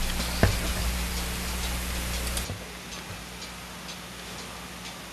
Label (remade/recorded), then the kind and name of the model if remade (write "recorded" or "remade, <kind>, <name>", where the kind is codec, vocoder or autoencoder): recorded